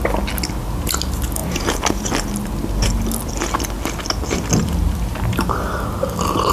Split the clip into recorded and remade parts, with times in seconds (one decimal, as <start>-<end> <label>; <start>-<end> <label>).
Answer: 0.0-1.4 recorded; 1.4-2.3 remade; 2.3-5.1 recorded; 5.1-5.7 remade; 5.7-6.5 recorded